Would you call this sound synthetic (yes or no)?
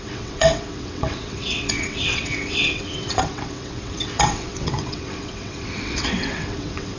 yes